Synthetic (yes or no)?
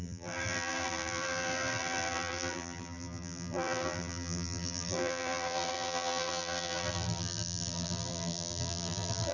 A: yes